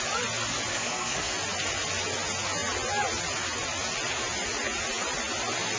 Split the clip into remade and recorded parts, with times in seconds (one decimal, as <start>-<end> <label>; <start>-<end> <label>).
0.0-0.7 recorded; 0.7-1.3 remade; 1.3-5.8 recorded

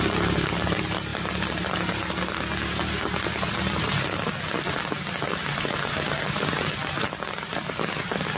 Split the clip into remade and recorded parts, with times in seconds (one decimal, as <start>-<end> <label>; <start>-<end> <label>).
0.0-8.4 recorded

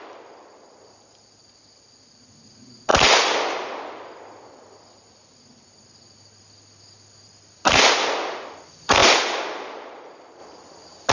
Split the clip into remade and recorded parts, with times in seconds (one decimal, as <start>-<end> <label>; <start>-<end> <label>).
0.0-10.4 recorded; 10.4-11.1 remade